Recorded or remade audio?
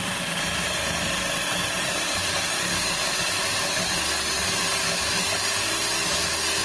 recorded